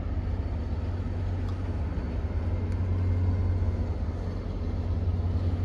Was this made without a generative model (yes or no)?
yes